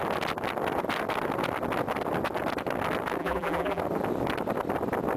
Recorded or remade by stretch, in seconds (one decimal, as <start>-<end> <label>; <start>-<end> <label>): 0.0-3.2 recorded; 3.2-3.8 remade; 3.8-5.2 recorded